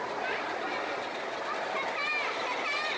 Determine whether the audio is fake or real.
real